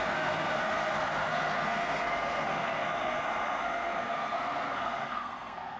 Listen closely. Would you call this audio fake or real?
fake